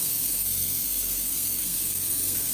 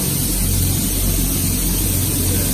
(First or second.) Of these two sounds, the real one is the second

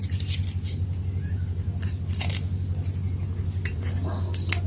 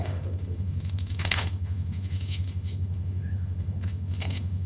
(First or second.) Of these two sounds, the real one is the first